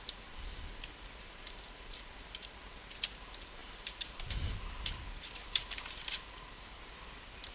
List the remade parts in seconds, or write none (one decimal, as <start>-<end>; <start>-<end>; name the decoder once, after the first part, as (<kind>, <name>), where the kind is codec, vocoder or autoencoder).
0.0-0.7 (vocoder, BigVGAN v2); 1.3-7.5